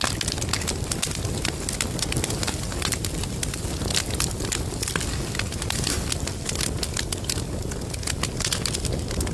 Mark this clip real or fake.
real